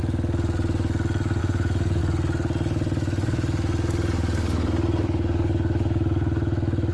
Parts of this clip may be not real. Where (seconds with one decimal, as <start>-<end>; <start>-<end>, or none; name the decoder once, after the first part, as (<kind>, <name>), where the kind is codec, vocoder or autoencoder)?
1.4-2.0 (vocoder, Vocos)